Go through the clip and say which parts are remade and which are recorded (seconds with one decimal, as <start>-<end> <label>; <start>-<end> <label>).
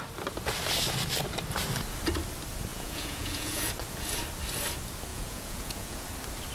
0.0-2.7 recorded; 2.7-3.6 remade; 3.6-5.1 recorded; 5.1-6.0 remade; 6.0-6.5 recorded